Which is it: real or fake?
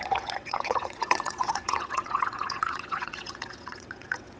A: fake